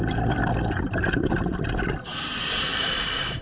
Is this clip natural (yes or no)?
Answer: yes